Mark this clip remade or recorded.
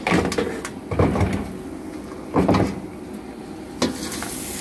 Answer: recorded